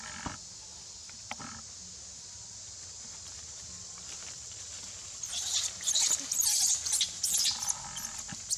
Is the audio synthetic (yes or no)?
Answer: no